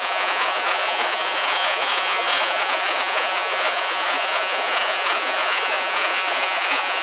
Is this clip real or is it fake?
fake